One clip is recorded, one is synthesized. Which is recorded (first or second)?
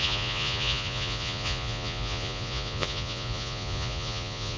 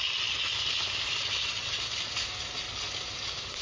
second